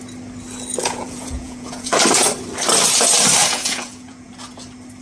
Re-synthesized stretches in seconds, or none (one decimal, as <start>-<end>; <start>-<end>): 0.8-1.9; 3.4-4.3